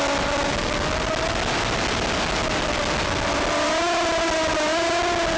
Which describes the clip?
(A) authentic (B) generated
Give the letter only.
A